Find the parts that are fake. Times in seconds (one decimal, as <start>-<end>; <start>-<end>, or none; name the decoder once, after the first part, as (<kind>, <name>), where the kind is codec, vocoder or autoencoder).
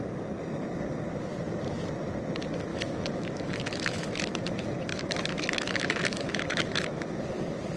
2.7-4.4 (autoencoder, DAC-VAE); 4.9-7.2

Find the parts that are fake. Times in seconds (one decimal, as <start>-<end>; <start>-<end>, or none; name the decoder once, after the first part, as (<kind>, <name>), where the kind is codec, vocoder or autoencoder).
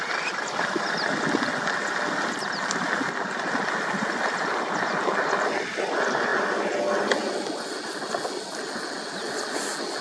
none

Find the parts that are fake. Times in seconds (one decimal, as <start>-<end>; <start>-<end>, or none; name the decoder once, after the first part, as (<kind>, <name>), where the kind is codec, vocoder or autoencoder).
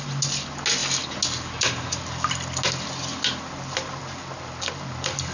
none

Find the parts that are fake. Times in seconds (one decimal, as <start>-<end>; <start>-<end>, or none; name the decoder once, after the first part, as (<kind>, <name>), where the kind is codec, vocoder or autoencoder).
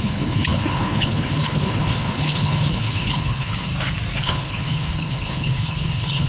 0.0-3.7 (codec, HILCodec); 4.2-6.3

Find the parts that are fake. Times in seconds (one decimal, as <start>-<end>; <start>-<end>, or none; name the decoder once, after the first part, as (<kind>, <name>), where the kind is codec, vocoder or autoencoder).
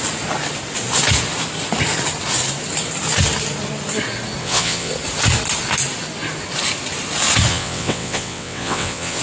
4.4-4.9 (vocoder, WaveNeXt); 7.5-9.2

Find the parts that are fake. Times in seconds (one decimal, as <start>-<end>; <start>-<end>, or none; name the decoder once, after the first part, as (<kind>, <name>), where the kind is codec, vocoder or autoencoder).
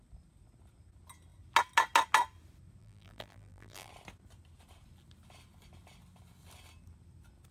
2.8-3.9 (vocoder, BigVGAN v2)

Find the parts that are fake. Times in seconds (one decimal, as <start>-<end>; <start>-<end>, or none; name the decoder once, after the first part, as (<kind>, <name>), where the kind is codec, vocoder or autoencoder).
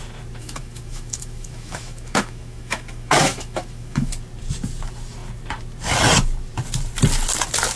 0.4-4.1 (autoencoder, DAC-VAE)